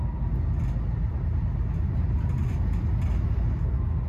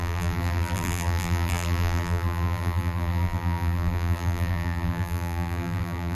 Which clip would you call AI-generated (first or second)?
second